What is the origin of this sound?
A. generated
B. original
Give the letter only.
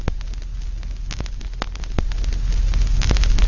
B